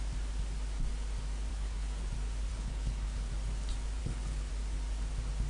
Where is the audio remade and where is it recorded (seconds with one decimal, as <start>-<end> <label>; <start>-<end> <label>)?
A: 0.0-1.5 recorded; 1.5-2.1 remade; 2.1-2.5 recorded; 2.5-3.3 remade; 3.3-4.0 recorded; 4.0-4.5 remade; 4.5-5.5 recorded